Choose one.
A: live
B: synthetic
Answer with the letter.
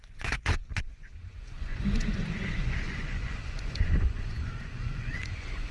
B